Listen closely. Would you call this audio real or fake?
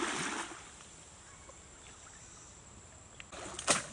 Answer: real